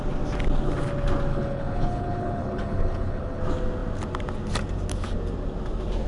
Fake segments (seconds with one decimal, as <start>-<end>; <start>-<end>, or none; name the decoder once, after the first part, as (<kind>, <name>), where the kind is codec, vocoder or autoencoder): 1.3-3.4 (codec, HILCodec)